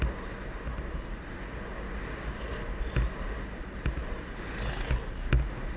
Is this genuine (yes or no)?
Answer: yes